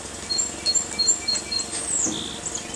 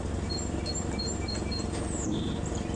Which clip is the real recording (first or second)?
first